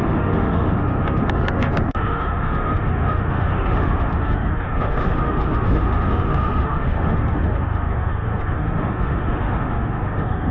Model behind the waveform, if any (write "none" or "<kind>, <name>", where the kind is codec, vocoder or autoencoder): autoencoder, DAC-VAE